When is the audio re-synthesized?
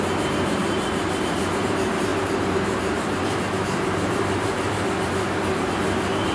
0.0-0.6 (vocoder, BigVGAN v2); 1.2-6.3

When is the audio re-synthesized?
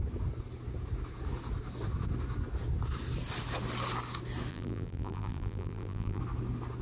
4.5-6.2 (vocoder, BigVGAN v2)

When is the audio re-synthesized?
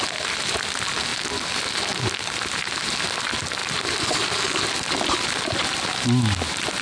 none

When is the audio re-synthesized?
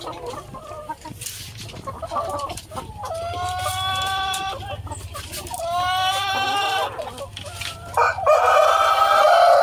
none